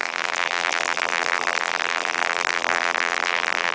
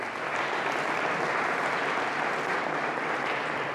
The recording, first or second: second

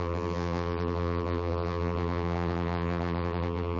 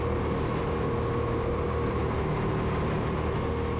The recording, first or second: second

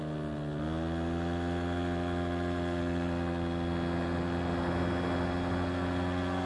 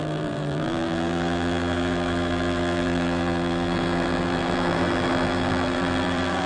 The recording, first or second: first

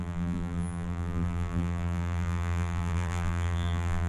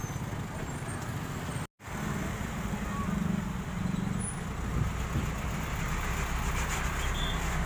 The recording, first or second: second